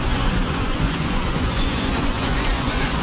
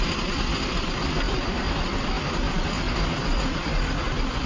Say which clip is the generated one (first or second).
first